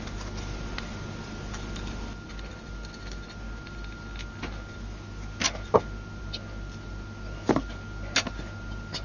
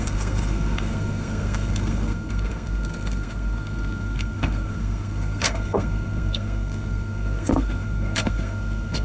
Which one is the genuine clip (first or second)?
first